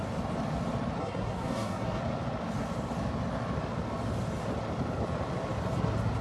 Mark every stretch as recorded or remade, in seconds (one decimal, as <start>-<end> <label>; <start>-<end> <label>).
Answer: 0.0-1.0 recorded; 1.0-2.0 remade; 2.0-6.2 recorded

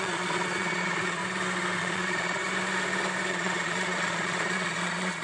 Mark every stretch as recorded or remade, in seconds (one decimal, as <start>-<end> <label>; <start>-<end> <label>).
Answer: 0.0-1.2 remade; 1.2-1.8 recorded; 1.8-2.4 remade; 2.4-3.3 recorded; 3.3-5.2 remade

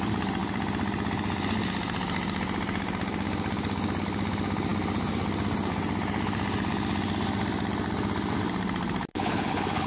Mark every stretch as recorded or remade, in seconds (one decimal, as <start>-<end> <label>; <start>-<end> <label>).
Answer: 0.0-9.1 recorded; 9.1-9.9 remade